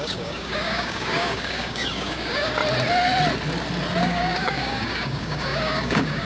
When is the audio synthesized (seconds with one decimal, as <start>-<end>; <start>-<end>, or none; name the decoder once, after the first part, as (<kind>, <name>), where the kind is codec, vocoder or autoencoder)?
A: 0.0-2.6 (codec, DAC); 4.0-6.2